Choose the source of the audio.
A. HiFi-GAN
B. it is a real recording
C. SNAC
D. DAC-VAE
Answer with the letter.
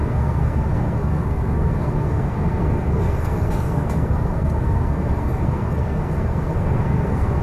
C